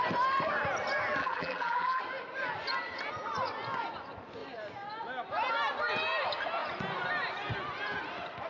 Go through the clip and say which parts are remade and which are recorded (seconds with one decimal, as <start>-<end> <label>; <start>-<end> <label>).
0.0-1.2 recorded; 1.2-2.0 remade; 2.0-8.5 recorded